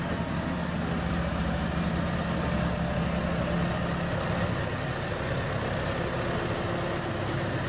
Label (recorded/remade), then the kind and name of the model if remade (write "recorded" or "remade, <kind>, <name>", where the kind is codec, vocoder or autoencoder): recorded